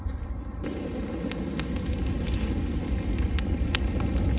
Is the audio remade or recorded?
recorded